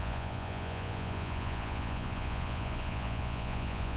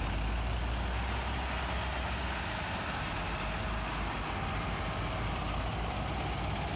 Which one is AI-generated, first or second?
first